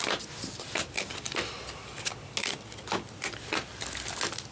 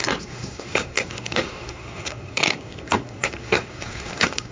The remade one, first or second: second